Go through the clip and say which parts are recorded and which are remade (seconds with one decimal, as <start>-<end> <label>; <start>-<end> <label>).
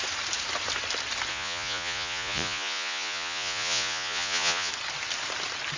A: 0.0-1.3 recorded; 1.3-4.7 remade; 4.7-5.8 recorded